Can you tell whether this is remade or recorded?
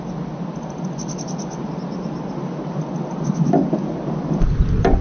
recorded